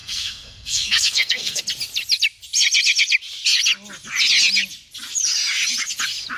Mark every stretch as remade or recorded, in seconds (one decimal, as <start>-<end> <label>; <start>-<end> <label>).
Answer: 0.0-1.6 remade; 1.6-6.4 recorded